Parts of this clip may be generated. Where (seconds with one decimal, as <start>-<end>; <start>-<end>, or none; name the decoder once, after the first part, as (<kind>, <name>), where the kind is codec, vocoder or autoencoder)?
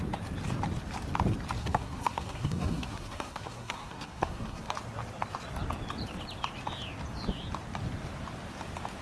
1.6-4.7 (codec, SNAC)